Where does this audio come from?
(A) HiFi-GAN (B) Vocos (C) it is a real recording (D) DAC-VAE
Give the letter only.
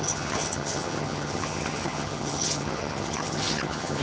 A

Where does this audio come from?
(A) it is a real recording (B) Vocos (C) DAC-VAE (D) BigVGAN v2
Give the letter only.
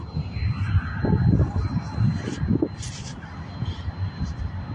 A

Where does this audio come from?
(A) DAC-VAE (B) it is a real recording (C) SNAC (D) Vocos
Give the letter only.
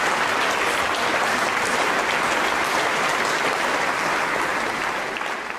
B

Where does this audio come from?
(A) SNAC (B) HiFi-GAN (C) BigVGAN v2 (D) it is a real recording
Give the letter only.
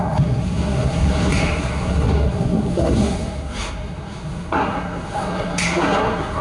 A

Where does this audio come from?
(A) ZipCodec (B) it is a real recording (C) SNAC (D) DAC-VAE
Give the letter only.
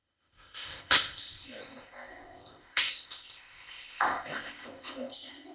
A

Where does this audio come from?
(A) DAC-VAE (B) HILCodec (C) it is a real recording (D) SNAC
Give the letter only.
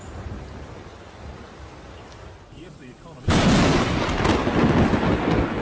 C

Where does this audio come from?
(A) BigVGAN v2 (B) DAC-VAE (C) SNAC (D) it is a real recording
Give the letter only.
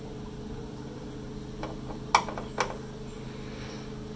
D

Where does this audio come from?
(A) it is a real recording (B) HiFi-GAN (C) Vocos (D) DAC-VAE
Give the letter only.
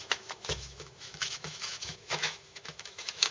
D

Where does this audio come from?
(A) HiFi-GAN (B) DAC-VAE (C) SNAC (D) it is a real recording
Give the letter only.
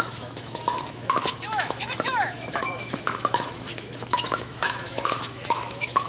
B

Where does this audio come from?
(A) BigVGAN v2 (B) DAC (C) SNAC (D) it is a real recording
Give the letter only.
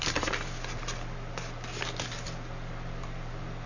D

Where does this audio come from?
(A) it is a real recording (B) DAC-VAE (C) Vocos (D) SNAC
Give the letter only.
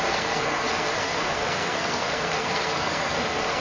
D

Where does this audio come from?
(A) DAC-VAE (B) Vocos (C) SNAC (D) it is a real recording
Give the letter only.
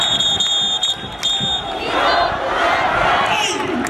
D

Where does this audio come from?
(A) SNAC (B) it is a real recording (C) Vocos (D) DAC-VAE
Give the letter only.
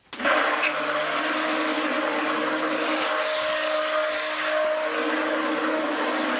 B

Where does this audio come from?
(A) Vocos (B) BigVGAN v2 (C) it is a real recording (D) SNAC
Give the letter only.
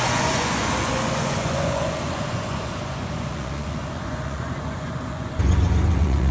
A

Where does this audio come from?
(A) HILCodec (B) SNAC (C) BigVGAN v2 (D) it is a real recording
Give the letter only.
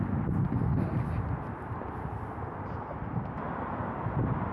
D